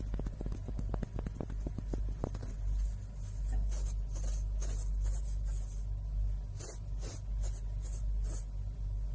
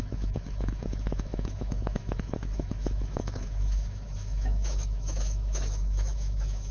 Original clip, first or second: first